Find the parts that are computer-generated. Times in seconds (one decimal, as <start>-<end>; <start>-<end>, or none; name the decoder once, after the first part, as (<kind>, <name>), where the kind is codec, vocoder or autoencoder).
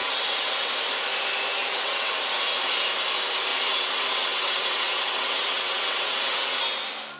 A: 0.0-0.7 (vocoder, WaveNeXt); 1.6-2.1; 3.5-6.6